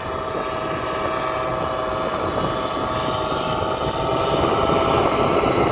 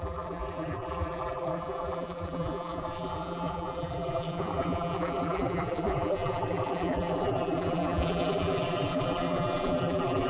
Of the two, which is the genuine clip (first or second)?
first